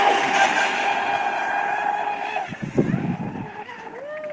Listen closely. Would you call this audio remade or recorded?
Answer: recorded